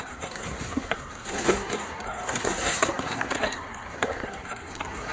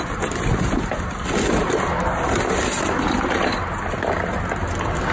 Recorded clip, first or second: second